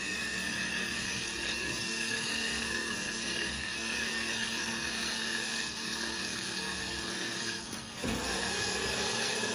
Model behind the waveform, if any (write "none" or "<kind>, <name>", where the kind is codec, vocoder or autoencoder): codec, SNAC